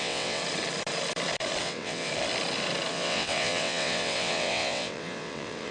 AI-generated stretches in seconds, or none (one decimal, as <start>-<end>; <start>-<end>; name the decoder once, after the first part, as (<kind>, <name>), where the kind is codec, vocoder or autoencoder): 0.0-0.4 (vocoder, WaveNeXt); 1.6-2.1; 2.9-5.7